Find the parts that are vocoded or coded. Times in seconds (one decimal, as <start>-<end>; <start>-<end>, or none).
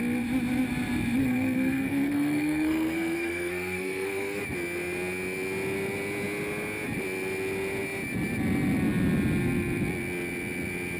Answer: 1.2-4.4